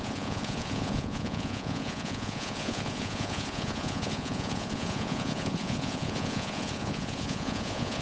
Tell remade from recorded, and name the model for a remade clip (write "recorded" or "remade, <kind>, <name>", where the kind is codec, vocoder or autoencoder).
remade, vocoder, Vocos